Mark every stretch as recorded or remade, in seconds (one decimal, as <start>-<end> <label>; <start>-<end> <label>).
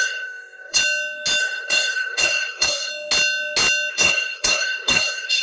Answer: 0.0-0.8 remade; 0.8-1.4 recorded; 1.4-2.9 remade; 2.9-3.9 recorded; 3.9-5.4 remade